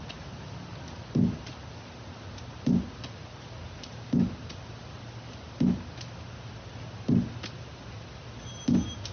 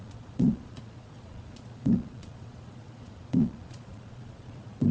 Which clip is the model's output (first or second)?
second